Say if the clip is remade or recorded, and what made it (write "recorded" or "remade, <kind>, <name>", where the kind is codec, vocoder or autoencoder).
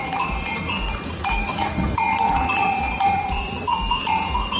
remade, vocoder, Vocos